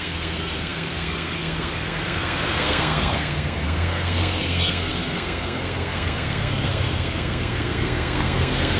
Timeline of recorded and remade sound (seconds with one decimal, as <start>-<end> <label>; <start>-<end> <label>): 0.0-8.8 remade